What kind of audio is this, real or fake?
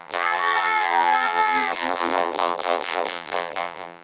fake